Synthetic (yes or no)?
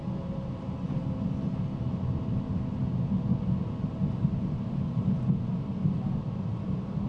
no